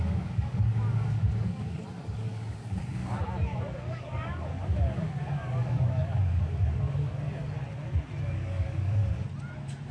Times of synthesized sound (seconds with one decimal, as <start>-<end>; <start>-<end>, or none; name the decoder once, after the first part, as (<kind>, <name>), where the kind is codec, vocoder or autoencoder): 0.0-7.4 (codec, DAC); 8.2-9.0